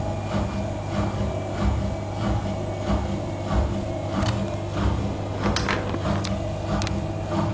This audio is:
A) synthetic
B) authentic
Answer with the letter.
B